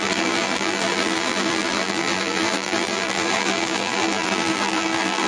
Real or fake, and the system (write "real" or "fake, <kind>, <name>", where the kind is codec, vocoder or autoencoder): fake, vocoder, BigVGAN v2